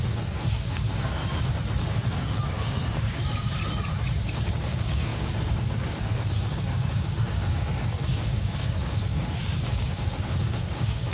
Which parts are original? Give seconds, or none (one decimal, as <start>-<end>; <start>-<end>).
1.2-1.8; 3.6-4.4